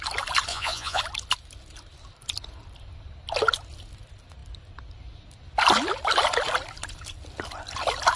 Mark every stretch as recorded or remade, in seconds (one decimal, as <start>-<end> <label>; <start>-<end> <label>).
0.0-0.5 recorded; 0.5-1.0 remade; 1.0-8.2 recorded